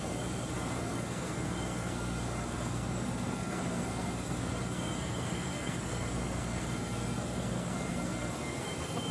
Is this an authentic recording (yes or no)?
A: no